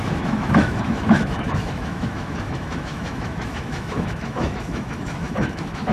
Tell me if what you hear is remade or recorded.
remade